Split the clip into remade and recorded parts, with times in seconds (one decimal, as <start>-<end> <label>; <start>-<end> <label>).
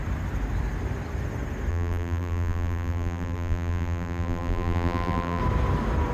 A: 0.0-1.7 recorded; 1.7-5.4 remade; 5.4-6.1 recorded